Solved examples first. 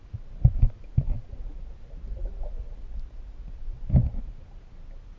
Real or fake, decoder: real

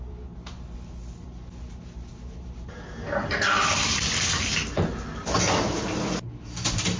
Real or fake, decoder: real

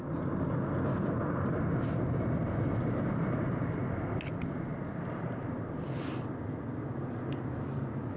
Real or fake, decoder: real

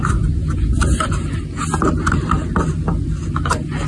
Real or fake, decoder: real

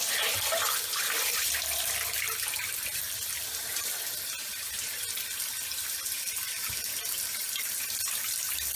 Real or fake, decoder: real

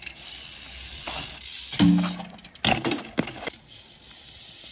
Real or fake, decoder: real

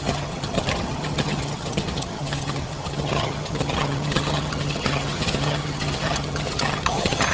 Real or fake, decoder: fake, vocoder, HiFi-GAN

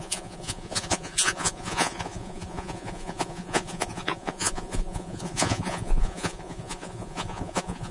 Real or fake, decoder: fake, vocoder, Vocos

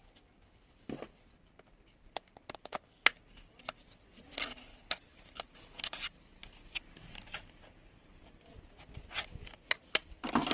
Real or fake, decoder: real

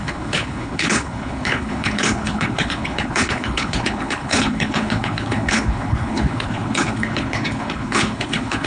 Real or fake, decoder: fake, codec, HILCodec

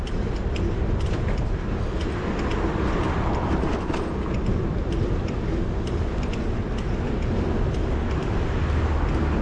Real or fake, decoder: real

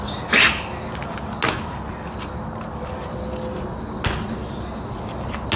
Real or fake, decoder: real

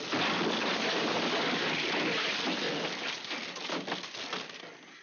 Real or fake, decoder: real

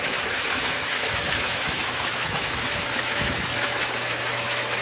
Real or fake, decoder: fake, autoencoder, DAC-VAE